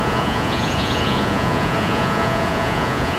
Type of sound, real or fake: fake